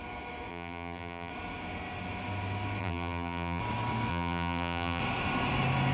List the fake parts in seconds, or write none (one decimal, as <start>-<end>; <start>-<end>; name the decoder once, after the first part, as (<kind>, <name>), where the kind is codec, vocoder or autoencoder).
0.5-1.3 (vocoder, BigVGAN v2); 2.8-3.6; 4.1-5.0